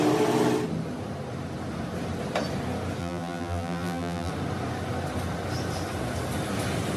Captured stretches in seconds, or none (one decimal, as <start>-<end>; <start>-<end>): 0.0-3.0; 4.3-7.0